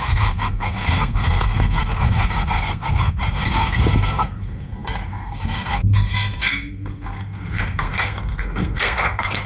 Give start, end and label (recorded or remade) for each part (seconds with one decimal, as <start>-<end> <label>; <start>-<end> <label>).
0.0-9.5 remade